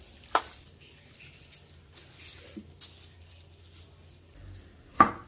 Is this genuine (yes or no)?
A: yes